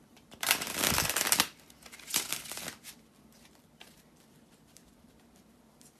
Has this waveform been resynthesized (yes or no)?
yes